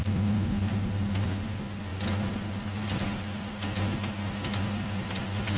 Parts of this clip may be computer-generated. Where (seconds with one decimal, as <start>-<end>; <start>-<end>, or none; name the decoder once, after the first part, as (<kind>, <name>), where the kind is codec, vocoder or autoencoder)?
0.0-0.7 (autoencoder, DAC-VAE)